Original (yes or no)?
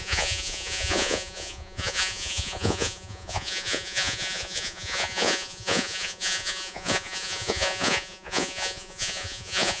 no